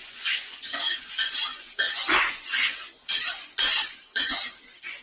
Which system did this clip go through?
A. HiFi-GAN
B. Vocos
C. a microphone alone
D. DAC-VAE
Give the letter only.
B